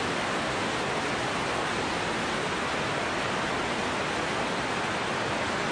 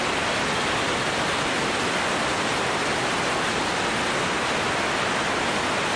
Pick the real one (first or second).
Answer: second